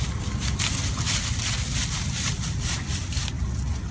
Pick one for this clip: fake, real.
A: real